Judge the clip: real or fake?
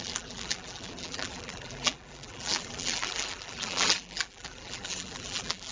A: fake